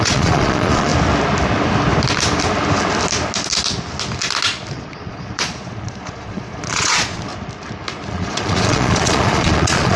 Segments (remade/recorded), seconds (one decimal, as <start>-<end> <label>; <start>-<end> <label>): 0.0-0.9 remade; 0.9-4.7 recorded; 4.7-7.3 remade; 7.3-8.1 recorded; 8.1-10.0 remade